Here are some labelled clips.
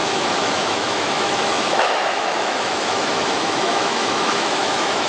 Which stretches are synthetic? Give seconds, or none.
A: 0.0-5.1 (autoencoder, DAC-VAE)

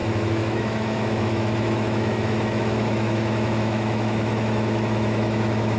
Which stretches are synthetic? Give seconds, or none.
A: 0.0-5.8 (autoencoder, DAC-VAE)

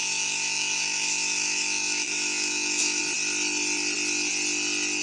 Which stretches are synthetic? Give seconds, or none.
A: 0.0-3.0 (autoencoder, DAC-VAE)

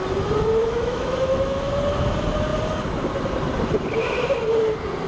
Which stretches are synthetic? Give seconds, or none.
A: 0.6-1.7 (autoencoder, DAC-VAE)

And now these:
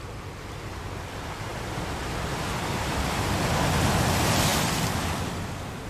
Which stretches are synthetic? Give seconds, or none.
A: none

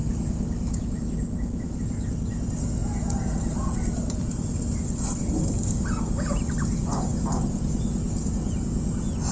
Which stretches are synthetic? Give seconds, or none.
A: 0.0-1.8 (autoencoder, DAC-VAE)

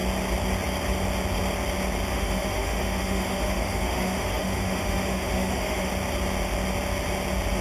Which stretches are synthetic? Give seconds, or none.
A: 2.1-5.9 (autoencoder, DAC-VAE)